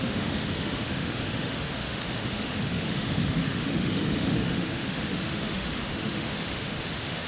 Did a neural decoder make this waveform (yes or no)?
yes